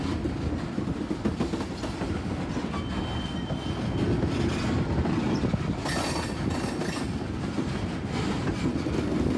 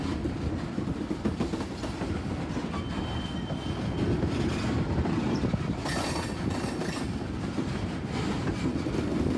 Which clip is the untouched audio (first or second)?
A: first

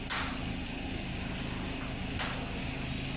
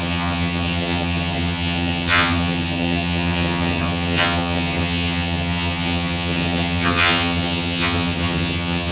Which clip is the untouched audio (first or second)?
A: first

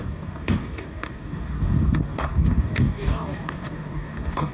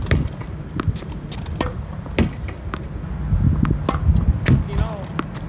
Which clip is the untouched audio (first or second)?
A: second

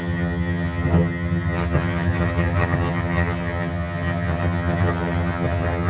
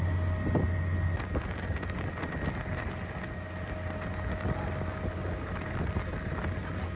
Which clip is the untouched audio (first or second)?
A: second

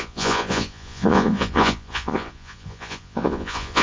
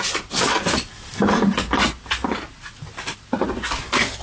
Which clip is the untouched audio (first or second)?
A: second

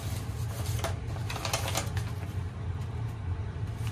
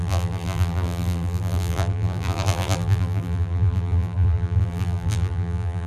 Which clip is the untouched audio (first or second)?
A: first